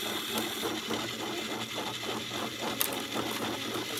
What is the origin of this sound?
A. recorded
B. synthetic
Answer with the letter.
A